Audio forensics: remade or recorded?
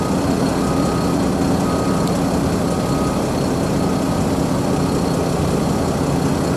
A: recorded